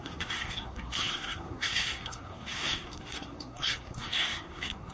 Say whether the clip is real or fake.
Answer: fake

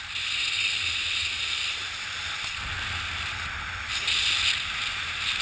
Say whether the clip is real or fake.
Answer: real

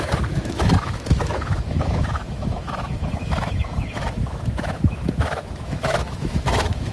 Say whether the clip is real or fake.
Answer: fake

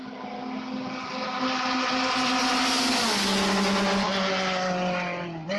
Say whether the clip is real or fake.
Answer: real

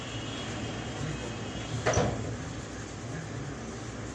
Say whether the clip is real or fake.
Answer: real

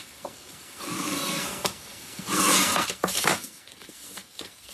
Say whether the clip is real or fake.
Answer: fake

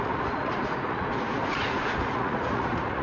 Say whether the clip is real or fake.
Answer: fake